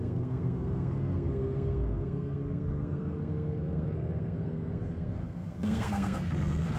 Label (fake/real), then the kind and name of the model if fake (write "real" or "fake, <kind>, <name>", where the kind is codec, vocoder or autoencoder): fake, codec, SNAC